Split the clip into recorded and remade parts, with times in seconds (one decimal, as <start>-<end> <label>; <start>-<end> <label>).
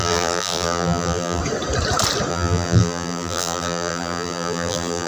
0.0-1.4 remade; 1.4-2.3 recorded; 2.3-5.1 remade